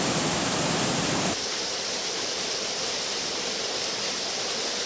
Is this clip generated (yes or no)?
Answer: no